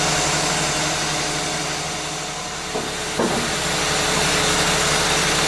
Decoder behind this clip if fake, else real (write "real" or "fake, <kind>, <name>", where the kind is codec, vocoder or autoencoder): real